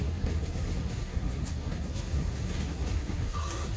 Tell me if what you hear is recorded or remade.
remade